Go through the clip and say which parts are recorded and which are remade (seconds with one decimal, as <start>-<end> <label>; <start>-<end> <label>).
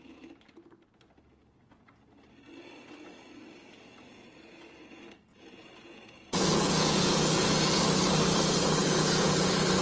0.0-5.3 recorded; 5.3-7.8 remade; 7.8-8.8 recorded; 8.8-9.3 remade; 9.3-9.8 recorded